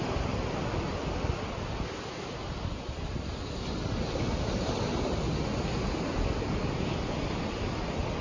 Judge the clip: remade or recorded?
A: recorded